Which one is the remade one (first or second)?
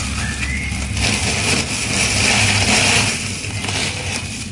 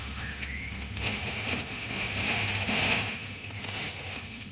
second